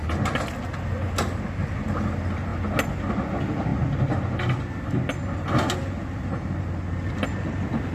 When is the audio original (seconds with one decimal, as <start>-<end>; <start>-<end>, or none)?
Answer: 0.0-7.9